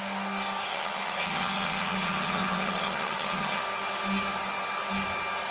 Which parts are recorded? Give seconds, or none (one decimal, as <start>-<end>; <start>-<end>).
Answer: 0.0-0.7; 3.6-5.5